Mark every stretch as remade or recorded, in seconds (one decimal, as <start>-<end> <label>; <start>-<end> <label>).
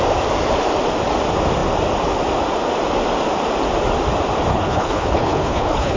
0.0-4.5 recorded; 4.5-6.0 remade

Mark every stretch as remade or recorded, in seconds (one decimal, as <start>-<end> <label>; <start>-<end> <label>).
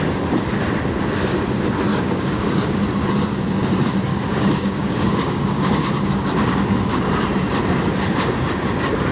0.0-1.9 recorded; 1.9-2.8 remade; 2.8-4.1 recorded; 4.1-7.3 remade; 7.3-9.1 recorded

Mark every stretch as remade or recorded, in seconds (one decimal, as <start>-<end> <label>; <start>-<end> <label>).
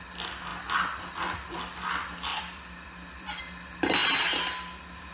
0.0-2.3 recorded; 2.3-3.4 remade; 3.4-5.1 recorded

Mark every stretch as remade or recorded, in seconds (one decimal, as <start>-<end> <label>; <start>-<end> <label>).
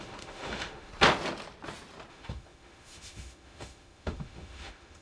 0.0-0.9 remade; 0.9-2.1 recorded; 2.1-5.0 remade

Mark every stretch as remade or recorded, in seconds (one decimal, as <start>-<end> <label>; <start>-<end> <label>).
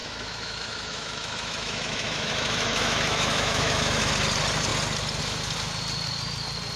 0.0-4.1 remade; 4.1-6.8 recorded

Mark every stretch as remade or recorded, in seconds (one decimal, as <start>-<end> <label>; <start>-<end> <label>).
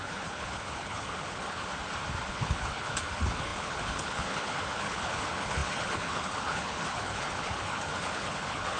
0.0-1.7 remade; 1.7-2.3 recorded; 2.3-8.8 remade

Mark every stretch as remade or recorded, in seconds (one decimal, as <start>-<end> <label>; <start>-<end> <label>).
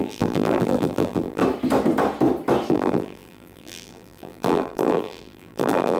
0.0-1.4 remade; 1.4-2.7 recorded; 2.7-6.0 remade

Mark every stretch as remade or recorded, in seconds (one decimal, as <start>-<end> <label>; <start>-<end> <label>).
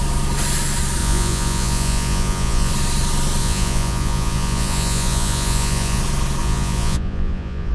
0.0-1.0 recorded; 1.0-2.7 remade; 2.7-3.4 recorded; 3.4-6.0 remade; 6.0-6.4 recorded; 6.4-7.7 remade